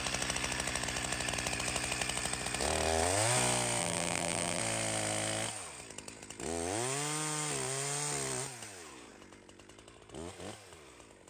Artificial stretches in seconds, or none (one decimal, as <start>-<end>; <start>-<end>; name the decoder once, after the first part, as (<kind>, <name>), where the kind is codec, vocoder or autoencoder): 3.8-4.6 (vocoder, BigVGAN v2)